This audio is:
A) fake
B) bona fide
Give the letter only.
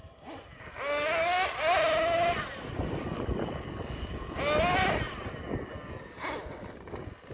B